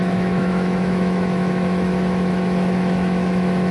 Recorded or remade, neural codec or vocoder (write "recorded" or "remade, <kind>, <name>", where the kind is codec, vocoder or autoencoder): remade, autoencoder, DAC-VAE